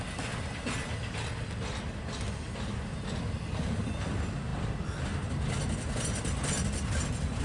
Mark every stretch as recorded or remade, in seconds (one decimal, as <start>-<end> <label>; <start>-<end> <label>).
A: 0.0-7.4 recorded